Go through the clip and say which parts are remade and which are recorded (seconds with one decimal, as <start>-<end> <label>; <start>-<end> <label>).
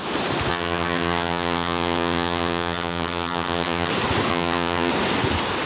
0.0-0.5 recorded; 0.5-3.9 remade; 3.9-4.3 recorded; 4.3-4.9 remade; 4.9-5.7 recorded